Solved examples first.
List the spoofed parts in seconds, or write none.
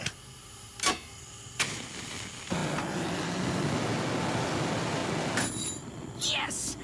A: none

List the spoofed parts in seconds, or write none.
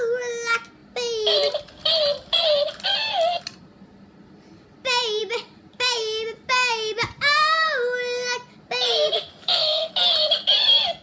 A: 9.4-9.9 (codec, SNAC)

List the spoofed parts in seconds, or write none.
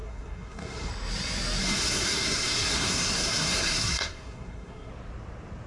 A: 0.0-0.9 (codec, SNAC); 1.6-4.9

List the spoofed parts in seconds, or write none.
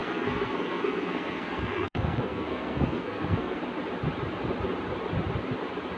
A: 0.0-3.6 (codec, SNAC)